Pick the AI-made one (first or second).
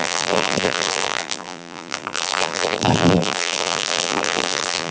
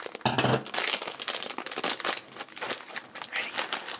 first